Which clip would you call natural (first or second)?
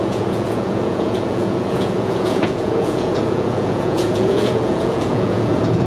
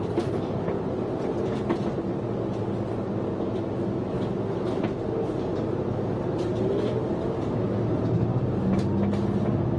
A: second